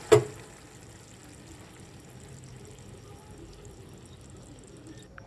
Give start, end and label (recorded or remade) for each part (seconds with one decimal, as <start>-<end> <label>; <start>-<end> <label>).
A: 0.0-5.3 recorded